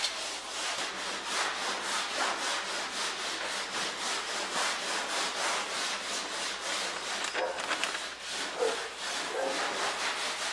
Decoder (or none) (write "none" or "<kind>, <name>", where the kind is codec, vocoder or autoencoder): none